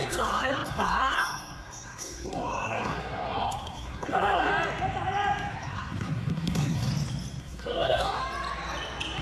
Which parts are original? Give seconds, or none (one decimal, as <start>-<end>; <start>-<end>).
4.5-5.5; 6.9-7.4; 8.2-9.2